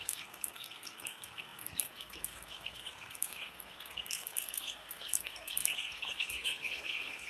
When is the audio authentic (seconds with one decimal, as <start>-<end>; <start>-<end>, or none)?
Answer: none